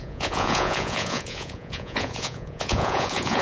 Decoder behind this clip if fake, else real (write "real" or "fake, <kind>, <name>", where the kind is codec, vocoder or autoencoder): fake, vocoder, Vocos